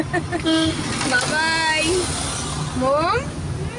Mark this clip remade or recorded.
recorded